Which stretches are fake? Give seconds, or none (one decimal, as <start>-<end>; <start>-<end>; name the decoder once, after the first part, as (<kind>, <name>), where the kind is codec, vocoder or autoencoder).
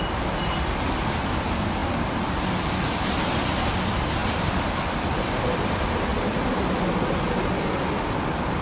none